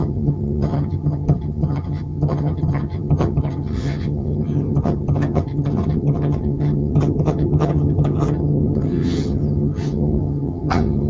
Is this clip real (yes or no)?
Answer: no